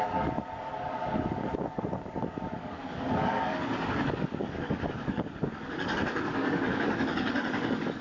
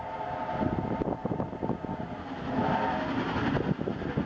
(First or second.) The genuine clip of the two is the second